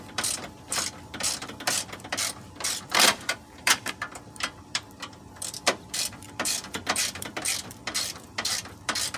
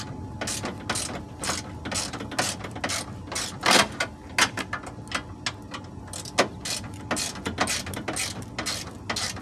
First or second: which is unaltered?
second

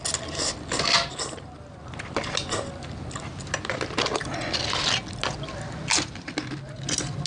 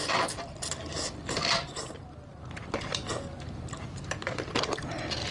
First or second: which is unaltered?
first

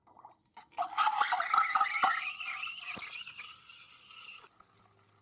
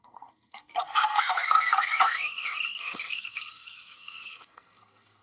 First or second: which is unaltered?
first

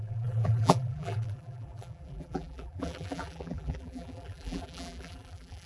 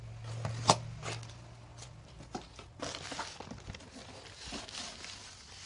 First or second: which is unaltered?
second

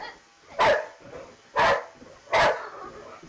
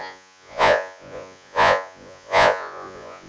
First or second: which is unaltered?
first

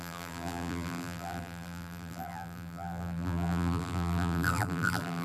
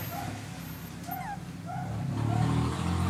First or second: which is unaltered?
second